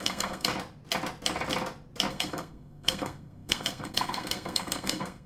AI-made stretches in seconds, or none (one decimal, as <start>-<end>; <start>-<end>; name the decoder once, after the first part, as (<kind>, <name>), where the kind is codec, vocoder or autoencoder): 0.0-0.5 (codec, SNAC); 2.1-5.3